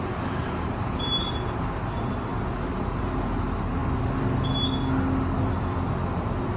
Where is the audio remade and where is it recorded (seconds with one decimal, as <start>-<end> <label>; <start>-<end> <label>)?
0.0-6.6 recorded